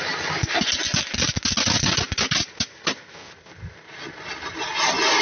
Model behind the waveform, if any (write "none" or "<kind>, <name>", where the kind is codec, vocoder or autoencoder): none